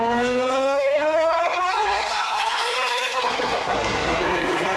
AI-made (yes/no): yes